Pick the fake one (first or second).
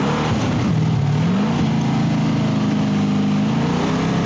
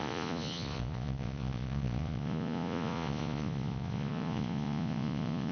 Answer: second